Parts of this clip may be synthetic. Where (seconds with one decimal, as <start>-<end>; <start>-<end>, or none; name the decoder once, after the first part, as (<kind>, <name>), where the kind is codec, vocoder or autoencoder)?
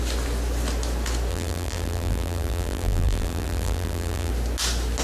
1.3-4.3 (vocoder, BigVGAN v2)